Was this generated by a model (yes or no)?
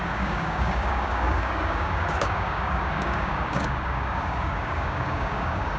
yes